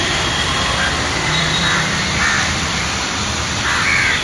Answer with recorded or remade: remade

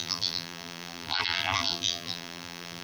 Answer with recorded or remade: remade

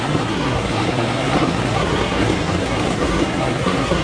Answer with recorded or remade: remade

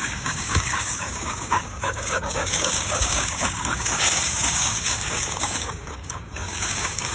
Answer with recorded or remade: remade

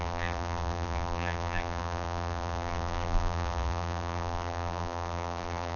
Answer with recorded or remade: remade